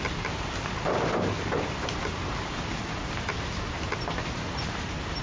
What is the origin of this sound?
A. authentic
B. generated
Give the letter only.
A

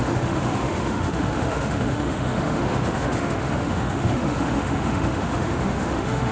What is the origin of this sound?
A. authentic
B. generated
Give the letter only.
B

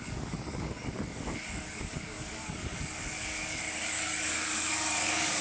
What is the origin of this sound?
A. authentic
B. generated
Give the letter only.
B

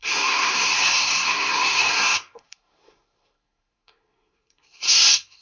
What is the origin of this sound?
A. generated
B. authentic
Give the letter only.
A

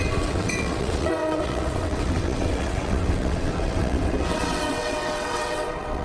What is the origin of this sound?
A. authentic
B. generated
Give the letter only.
B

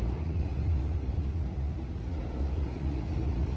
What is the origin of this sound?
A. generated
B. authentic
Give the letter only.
A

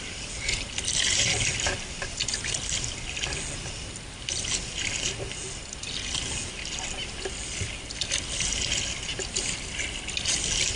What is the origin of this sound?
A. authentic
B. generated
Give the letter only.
A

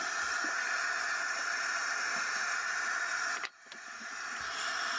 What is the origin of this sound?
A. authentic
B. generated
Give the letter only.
A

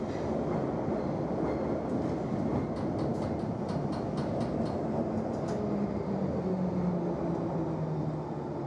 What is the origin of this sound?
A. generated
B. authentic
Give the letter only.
B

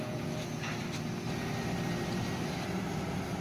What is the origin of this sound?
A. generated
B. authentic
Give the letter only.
B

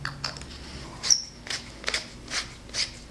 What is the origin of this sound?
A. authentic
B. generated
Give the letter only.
A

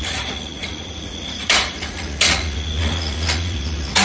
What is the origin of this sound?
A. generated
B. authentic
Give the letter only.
A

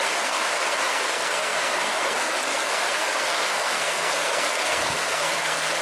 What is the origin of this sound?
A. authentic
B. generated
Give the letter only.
B